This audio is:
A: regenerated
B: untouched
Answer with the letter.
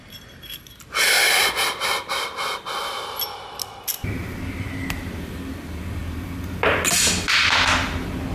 B